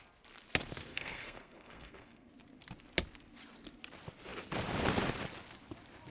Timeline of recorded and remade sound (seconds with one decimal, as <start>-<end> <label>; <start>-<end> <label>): 0.0-0.9 recorded; 0.9-2.3 remade; 2.3-6.1 recorded